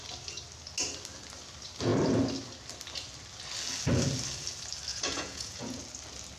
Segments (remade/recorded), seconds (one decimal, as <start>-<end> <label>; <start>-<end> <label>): 0.0-4.9 recorded; 4.9-5.8 remade; 5.8-6.4 recorded